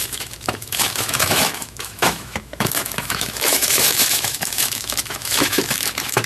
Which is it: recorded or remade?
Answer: remade